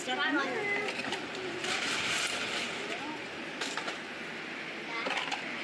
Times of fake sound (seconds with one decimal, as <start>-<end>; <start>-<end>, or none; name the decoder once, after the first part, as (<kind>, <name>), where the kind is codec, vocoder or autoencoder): 1.0-2.4 (vocoder, BigVGAN v2); 3.2-4.1